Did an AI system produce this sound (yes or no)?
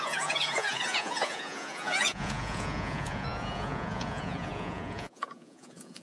yes